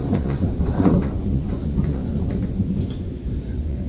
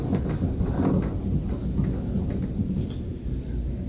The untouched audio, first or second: second